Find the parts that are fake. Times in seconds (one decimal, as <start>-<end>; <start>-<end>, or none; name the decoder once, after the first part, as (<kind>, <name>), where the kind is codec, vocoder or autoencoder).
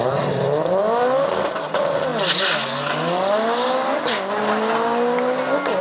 0.0-2.1 (vocoder, BigVGAN v2)